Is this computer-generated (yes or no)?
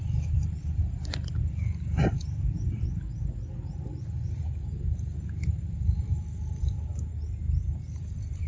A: yes